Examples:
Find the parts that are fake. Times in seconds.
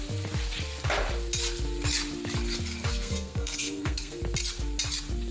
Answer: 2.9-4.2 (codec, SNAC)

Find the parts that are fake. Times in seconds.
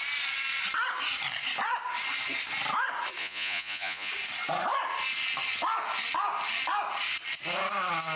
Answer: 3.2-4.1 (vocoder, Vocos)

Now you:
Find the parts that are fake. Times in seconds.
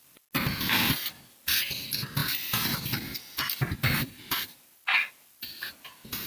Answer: none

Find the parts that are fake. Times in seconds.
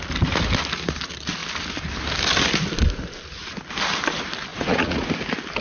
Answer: 4.5-5.1 (vocoder, Vocos)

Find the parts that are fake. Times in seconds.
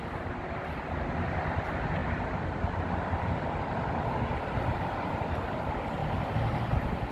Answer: 2.0-5.1 (vocoder, BigVGAN v2)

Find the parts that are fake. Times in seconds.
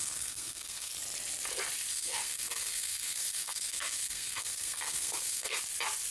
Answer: 0.0-0.9 (codec, SNAC); 1.9-5.6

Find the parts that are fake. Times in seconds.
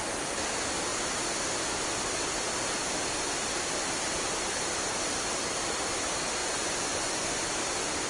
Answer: 6.4-7.5 (vocoder, Vocos)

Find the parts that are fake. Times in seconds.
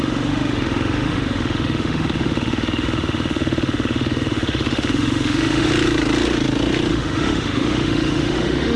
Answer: 0.0-5.7 (autoencoder, DAC-VAE); 6.9-8.8